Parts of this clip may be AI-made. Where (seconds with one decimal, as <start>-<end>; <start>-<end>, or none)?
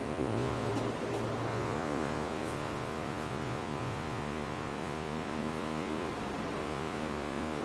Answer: 0.0-0.7; 1.5-6.1; 6.6-7.6